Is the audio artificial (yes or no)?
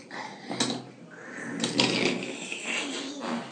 no